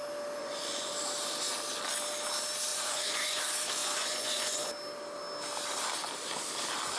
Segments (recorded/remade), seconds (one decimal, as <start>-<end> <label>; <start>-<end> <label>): 0.0-0.4 recorded; 0.4-0.9 remade; 0.9-2.7 recorded; 2.7-3.4 remade; 3.4-3.8 recorded; 3.8-4.7 remade; 4.7-7.0 recorded